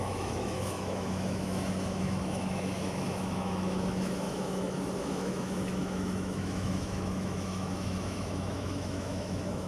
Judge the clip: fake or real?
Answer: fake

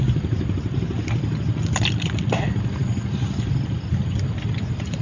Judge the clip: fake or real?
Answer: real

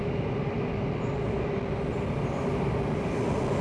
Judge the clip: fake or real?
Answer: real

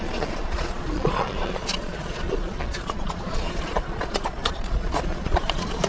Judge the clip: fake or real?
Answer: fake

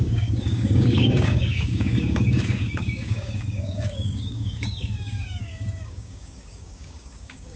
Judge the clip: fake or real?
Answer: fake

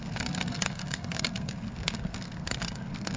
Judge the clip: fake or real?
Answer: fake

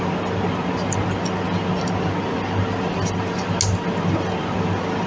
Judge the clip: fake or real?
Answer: real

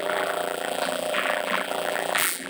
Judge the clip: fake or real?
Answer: fake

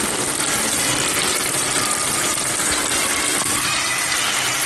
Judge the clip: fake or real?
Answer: real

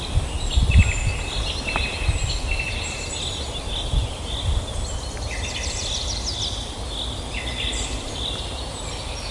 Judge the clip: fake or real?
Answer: real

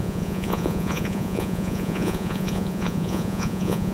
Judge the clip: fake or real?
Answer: fake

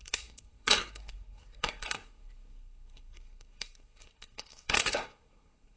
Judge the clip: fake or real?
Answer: fake